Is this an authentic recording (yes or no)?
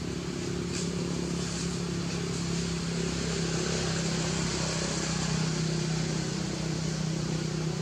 yes